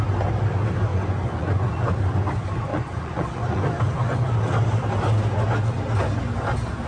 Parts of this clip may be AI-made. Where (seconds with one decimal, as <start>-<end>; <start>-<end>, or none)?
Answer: 0.9-1.8; 2.7-4.3